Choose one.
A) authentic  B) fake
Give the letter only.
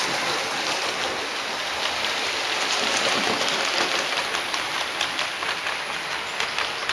A